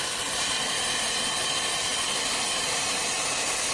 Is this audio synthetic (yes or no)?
no